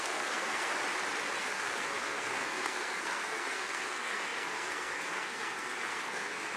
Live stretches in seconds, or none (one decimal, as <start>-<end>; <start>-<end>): 0.7-1.4